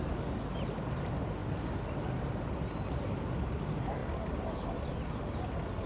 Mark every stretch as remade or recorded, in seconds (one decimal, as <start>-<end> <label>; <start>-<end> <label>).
0.0-5.9 recorded